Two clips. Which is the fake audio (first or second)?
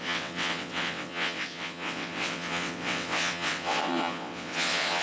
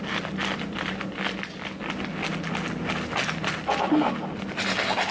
first